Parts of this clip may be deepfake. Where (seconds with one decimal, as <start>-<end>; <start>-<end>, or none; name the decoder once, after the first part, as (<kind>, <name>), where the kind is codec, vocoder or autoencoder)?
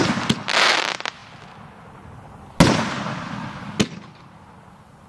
none